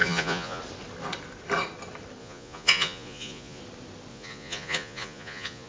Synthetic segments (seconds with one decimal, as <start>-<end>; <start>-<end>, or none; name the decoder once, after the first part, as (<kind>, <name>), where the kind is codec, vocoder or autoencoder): 0.0-0.6 (vocoder, Vocos); 2.2-3.6; 4.1-5.7